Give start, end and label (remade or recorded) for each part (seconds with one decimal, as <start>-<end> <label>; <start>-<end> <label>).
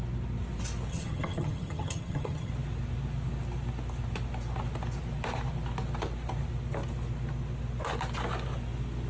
0.0-0.9 recorded; 0.9-2.5 remade; 2.5-9.1 recorded